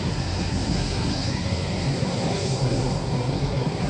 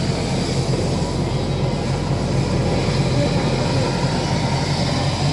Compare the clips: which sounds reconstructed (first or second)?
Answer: first